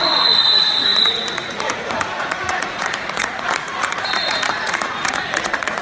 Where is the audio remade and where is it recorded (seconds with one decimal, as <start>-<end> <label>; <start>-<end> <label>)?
0.0-5.8 remade